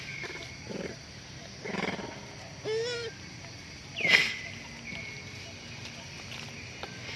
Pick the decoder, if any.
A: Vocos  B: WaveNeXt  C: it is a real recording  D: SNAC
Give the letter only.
C